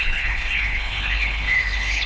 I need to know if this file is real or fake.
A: fake